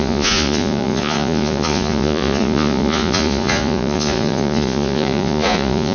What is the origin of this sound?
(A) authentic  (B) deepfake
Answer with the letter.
B